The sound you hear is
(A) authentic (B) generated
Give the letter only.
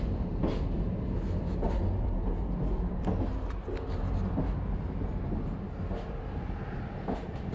A